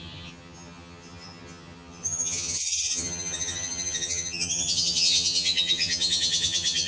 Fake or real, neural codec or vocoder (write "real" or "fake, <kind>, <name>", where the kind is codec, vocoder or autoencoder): fake, vocoder, HiFi-GAN